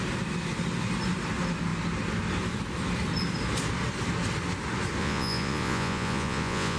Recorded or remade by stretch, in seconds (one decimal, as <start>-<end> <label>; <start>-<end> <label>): 0.0-5.0 recorded; 5.0-6.8 remade